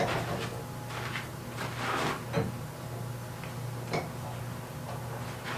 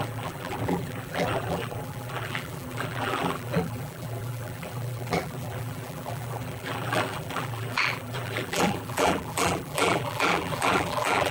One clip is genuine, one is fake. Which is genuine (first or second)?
first